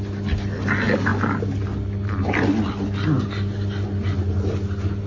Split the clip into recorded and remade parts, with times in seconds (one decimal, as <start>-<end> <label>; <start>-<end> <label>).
0.0-5.1 recorded